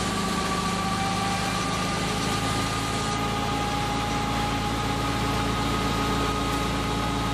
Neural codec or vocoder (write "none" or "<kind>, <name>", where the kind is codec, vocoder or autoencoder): none